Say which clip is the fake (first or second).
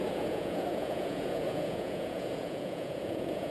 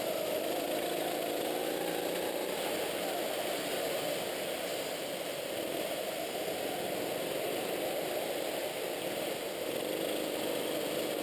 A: first